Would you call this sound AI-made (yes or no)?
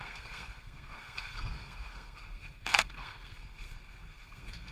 yes